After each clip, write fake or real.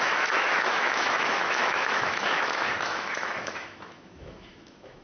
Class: fake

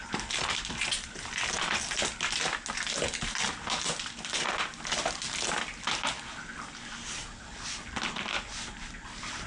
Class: real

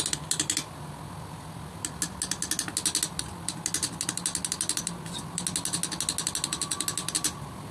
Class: real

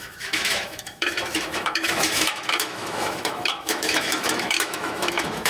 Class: fake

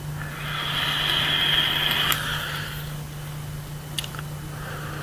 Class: real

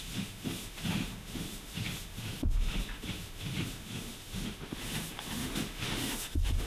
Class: fake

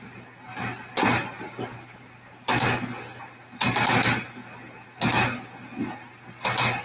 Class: real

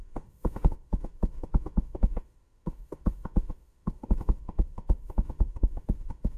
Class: fake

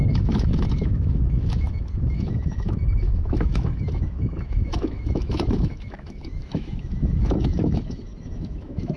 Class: fake